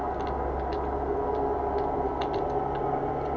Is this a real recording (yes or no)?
yes